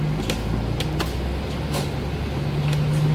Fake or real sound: real